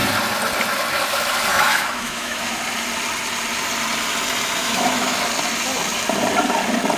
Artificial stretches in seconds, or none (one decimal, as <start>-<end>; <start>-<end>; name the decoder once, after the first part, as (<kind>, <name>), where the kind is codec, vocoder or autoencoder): 1.5-2.5 (autoencoder, DAC-VAE); 4.6-5.2